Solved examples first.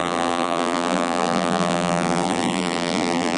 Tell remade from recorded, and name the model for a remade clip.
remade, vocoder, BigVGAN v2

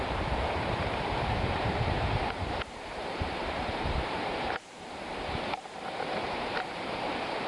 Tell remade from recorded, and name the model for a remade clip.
remade, vocoder, BigVGAN v2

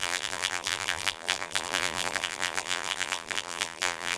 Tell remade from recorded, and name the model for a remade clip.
remade, vocoder, BigVGAN v2